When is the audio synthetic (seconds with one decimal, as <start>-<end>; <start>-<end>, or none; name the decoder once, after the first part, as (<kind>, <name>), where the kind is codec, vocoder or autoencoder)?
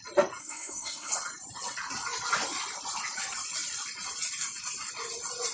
0.4-1.1 (codec, SNAC)